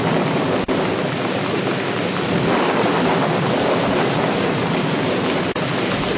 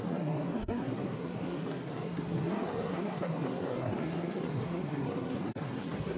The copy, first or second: second